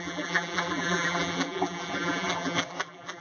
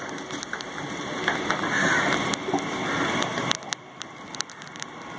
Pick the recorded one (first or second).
second